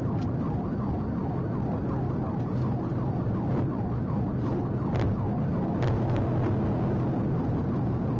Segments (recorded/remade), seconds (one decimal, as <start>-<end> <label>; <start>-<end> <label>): 0.0-8.2 recorded